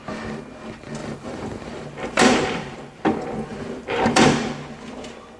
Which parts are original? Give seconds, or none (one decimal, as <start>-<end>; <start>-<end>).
0.0-1.0; 3.0-3.5; 4.6-5.4